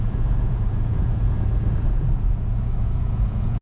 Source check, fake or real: fake